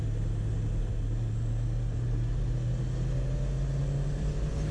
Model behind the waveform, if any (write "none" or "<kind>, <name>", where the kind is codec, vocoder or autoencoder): none